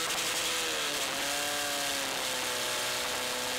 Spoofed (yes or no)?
no